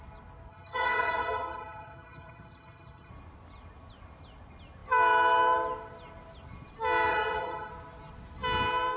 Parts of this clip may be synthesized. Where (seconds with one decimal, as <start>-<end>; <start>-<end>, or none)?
0.5-3.1; 7.1-7.7